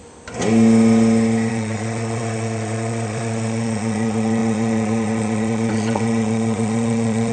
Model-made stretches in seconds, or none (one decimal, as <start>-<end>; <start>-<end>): 1.5-7.3